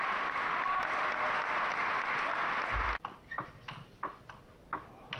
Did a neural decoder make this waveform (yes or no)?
no